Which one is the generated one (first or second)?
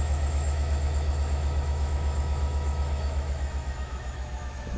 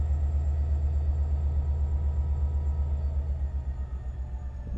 first